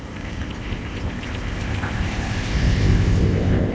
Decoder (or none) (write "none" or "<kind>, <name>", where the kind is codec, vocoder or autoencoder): codec, ZipCodec